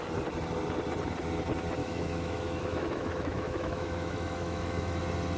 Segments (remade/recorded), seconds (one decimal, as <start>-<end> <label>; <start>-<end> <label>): 0.0-1.8 recorded; 1.8-5.0 remade; 5.0-5.4 recorded